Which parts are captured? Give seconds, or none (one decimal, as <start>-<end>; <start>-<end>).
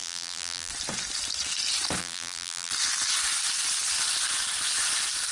0.7-2.0; 2.7-5.3